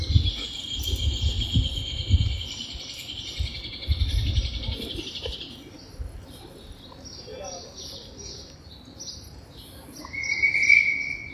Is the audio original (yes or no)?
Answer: yes